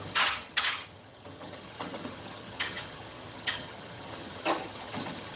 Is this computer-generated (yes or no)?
yes